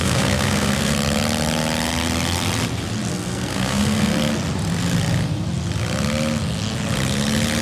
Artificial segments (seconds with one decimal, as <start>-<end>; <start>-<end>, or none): 0.0-0.9; 3.1-4.1